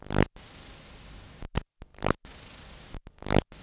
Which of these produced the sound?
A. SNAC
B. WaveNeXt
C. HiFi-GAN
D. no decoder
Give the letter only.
D